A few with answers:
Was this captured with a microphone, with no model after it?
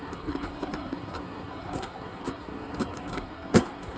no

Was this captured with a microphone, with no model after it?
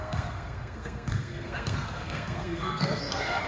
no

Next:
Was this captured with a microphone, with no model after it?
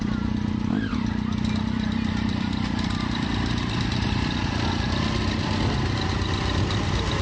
yes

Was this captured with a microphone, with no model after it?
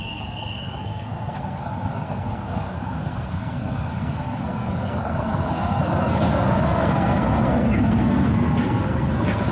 no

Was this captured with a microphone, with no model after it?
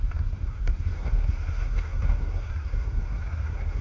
no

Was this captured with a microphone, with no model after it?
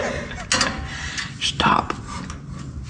yes